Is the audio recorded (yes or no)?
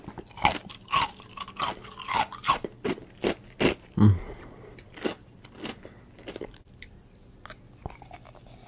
yes